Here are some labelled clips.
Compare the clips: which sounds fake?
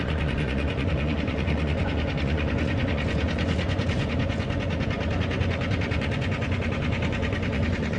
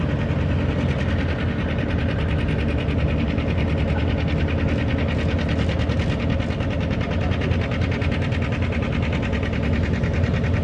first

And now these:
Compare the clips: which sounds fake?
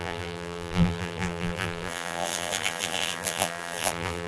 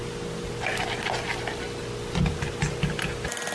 first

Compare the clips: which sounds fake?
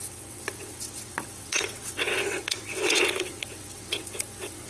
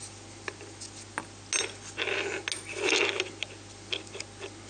first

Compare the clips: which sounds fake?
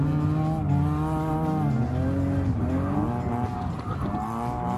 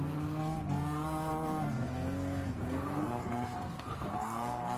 second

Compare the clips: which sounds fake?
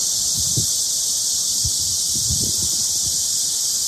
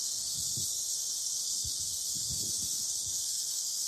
second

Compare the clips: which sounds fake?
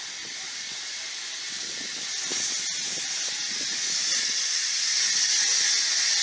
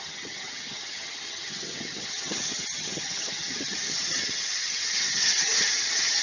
second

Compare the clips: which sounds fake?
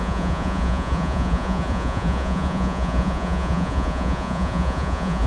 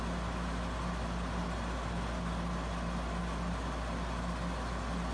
first